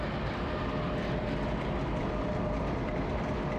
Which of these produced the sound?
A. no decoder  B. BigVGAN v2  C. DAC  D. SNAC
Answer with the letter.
A